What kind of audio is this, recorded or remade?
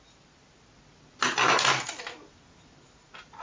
recorded